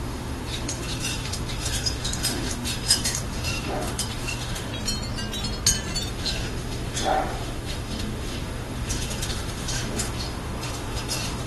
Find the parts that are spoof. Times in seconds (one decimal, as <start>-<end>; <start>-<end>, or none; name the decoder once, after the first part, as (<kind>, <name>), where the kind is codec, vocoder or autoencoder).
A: 0.0-4.7 (autoencoder, DAC-VAE); 6.1-11.5

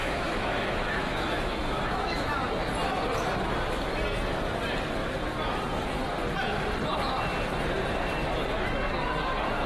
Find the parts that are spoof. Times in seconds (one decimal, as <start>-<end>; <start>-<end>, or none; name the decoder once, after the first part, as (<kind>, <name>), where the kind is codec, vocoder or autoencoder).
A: 0.0-2.3 (autoencoder, DAC-VAE)

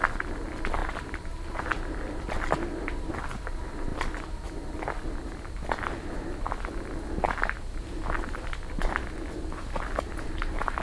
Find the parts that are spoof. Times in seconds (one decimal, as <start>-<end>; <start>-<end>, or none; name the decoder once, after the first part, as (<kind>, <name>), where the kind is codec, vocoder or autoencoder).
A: none

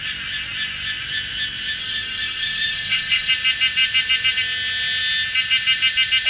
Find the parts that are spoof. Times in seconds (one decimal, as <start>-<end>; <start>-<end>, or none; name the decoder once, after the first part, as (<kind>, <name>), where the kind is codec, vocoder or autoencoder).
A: 1.8-3.3 (autoencoder, DAC-VAE)

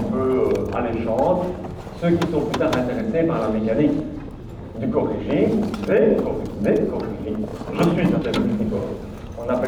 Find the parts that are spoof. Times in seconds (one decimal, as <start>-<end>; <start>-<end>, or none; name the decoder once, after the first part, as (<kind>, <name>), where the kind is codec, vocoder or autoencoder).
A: none